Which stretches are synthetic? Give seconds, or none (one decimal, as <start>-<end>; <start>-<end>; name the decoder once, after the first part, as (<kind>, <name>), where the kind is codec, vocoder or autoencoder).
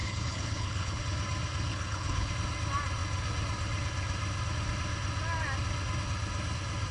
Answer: 0.0-1.0 (codec, HILCodec); 1.7-2.3